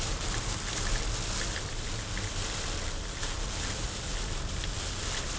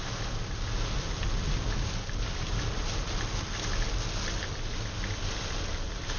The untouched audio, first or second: second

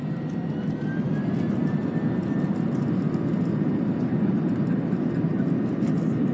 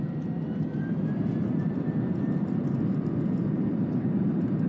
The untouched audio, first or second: first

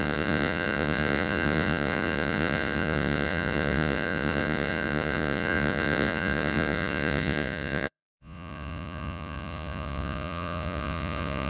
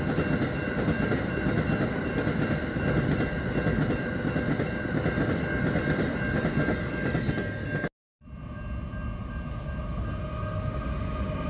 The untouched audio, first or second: second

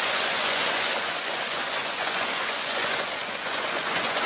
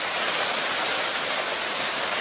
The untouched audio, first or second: second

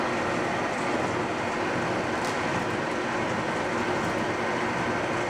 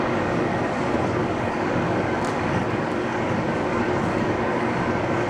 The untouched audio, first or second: first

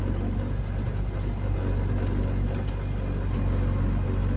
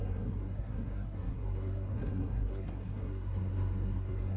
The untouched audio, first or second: first